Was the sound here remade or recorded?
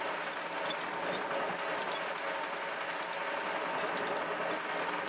recorded